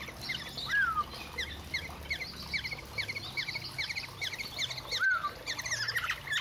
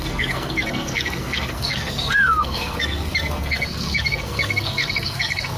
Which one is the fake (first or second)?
second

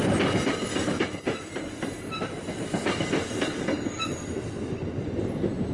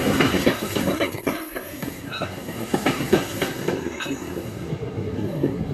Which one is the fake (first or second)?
second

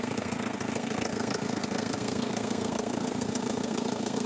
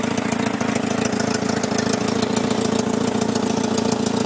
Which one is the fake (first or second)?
first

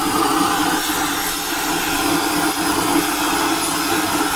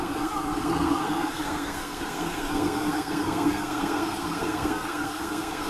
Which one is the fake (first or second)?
second